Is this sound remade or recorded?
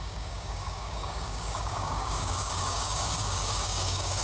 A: remade